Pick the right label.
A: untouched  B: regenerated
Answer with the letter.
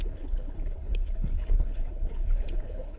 B